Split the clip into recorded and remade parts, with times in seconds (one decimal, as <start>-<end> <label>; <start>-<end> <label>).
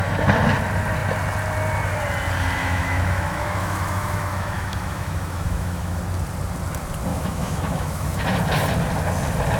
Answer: 0.0-2.6 recorded; 2.6-6.0 remade; 6.0-7.1 recorded; 7.1-8.2 remade; 8.2-9.6 recorded